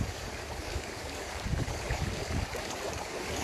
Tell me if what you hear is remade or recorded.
remade